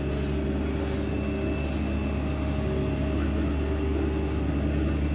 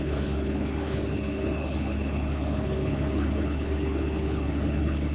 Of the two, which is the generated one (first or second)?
second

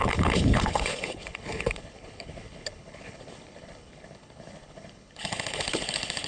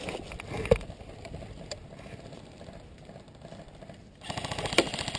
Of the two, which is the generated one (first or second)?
first